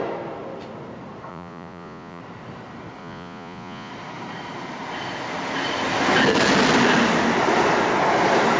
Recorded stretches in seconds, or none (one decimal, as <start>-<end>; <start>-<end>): 0.0-1.3; 2.2-3.0; 3.9-8.6